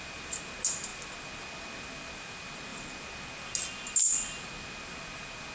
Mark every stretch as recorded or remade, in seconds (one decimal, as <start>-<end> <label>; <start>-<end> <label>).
0.0-5.5 recorded